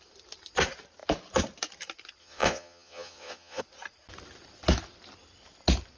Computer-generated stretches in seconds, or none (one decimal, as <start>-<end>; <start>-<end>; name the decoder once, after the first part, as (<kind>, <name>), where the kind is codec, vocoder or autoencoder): 2.2-3.6 (vocoder, Vocos)